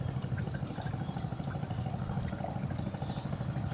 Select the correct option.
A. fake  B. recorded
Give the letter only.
B